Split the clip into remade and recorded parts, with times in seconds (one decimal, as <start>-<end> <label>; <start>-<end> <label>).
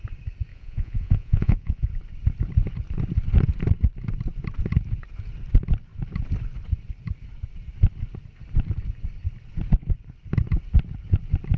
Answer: 0.0-0.5 recorded; 0.5-1.9 remade; 1.9-11.6 recorded